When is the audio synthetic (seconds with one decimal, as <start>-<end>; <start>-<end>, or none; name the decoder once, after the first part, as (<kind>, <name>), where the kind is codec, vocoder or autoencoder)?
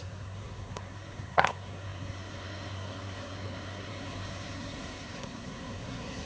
0.0-6.3 (codec, SNAC)